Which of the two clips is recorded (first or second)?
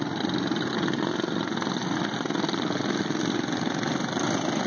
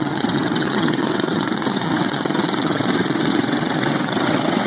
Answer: first